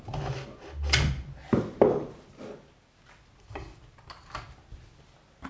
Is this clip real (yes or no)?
yes